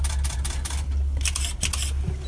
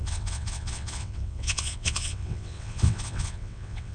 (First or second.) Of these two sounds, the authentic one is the first